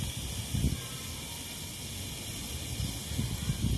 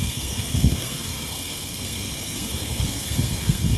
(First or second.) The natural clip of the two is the first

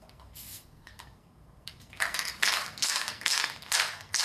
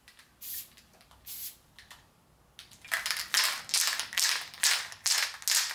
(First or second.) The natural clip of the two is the second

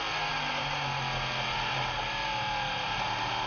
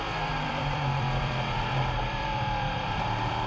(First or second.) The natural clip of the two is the first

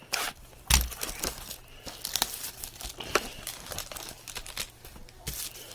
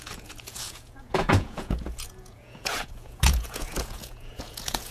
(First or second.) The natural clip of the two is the first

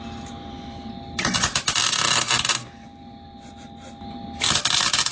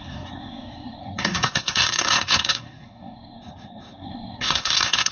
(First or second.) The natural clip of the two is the first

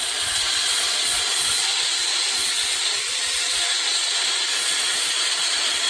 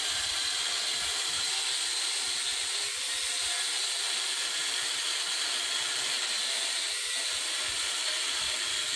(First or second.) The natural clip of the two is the second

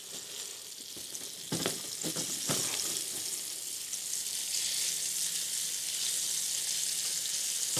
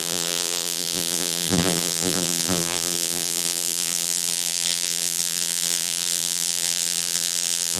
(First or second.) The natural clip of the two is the first